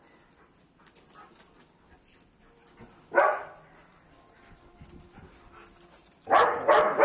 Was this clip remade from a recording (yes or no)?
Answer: no